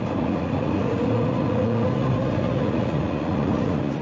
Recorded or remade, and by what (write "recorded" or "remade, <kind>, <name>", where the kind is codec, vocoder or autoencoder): remade, vocoder, Vocos